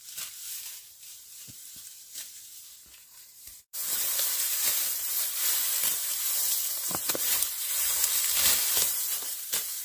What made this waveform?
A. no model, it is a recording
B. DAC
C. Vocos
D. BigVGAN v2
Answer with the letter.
D